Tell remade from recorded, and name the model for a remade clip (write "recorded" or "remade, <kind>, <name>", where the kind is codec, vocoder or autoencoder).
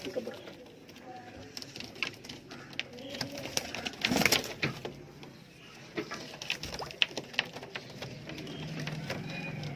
recorded